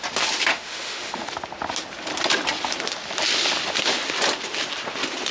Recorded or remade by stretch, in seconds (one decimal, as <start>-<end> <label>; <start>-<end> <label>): 0.0-0.5 recorded; 0.5-1.3 remade; 1.3-5.3 recorded

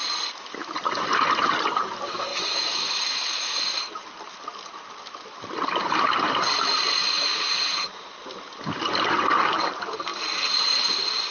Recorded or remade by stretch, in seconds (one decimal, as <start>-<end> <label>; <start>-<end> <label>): 0.0-2.3 recorded; 2.3-3.6 remade; 3.6-11.3 recorded

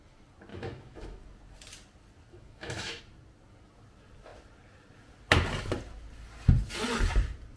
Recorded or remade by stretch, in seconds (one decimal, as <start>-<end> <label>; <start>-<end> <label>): 0.0-0.5 recorded; 0.5-1.2 remade; 1.2-2.3 recorded; 2.3-3.0 remade; 3.0-7.6 recorded

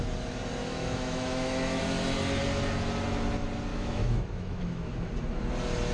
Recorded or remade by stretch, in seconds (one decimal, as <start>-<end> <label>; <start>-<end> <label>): 0.0-0.6 recorded; 0.6-1.8 remade; 1.8-3.7 recorded; 3.7-4.9 remade; 4.9-5.9 recorded

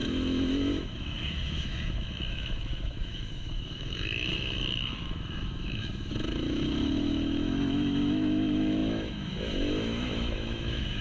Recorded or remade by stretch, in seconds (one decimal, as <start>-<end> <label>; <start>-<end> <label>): 0.0-11.0 remade

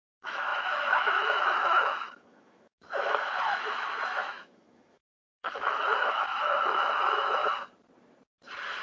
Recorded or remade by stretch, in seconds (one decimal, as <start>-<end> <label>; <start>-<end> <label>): 0.0-7.4 remade; 7.4-8.8 recorded